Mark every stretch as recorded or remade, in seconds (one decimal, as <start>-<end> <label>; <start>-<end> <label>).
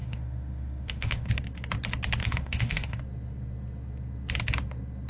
0.0-1.3 remade; 1.3-2.2 recorded; 2.2-3.0 remade; 3.0-5.1 recorded